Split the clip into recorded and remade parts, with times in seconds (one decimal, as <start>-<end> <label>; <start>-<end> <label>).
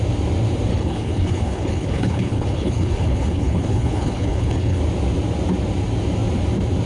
0.0-0.7 recorded; 0.7-4.8 remade; 4.8-6.9 recorded